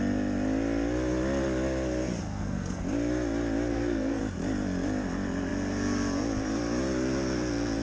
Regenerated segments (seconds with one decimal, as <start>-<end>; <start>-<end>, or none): 2.2-2.8; 3.7-4.2